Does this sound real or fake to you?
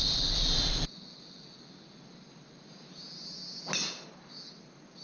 real